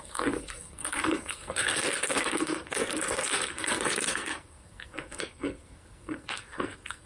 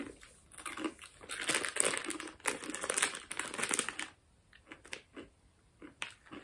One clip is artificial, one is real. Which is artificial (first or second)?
first